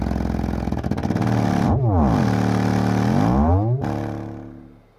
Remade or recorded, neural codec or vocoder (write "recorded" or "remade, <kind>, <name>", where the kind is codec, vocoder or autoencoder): recorded